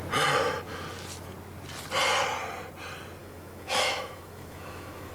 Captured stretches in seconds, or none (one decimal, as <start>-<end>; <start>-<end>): 0.0-3.2